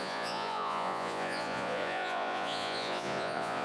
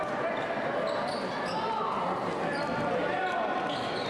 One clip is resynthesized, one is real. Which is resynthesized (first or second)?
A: first